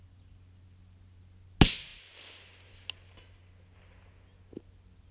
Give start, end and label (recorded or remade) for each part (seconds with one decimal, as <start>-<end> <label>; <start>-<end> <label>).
0.0-5.1 recorded